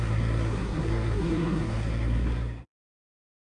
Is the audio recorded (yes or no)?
no